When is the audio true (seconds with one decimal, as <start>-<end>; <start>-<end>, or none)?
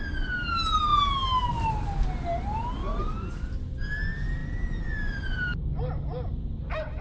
0.0-7.0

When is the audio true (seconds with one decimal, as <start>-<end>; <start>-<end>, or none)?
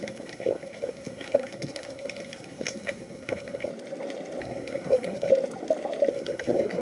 3.7-4.4; 5.3-6.1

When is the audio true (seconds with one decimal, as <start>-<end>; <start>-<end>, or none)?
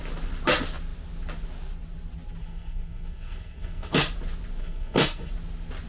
0.0-2.4; 3.9-4.6; 5.3-5.9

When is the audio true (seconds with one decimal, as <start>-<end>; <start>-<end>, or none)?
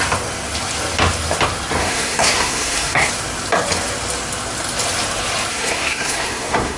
0.0-1.8; 3.1-5.5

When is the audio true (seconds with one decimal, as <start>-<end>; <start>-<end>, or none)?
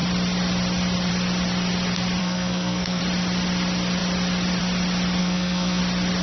0.0-2.2; 3.0-5.2; 5.8-6.2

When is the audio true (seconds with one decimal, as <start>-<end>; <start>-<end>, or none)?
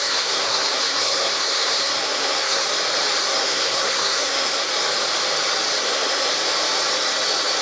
2.6-3.2; 4.7-5.8; 6.3-7.6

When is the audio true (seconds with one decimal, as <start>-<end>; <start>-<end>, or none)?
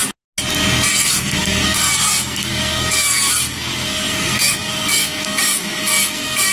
0.0-0.9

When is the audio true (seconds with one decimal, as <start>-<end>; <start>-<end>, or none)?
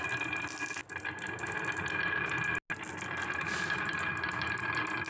0.0-5.1